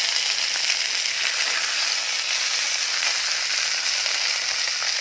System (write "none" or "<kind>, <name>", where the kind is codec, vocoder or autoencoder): none